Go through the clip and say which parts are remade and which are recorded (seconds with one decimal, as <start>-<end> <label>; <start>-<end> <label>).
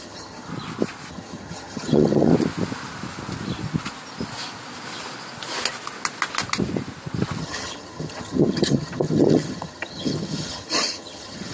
0.0-0.5 remade; 0.5-1.1 recorded; 1.1-2.3 remade; 2.3-7.4 recorded; 7.4-11.5 remade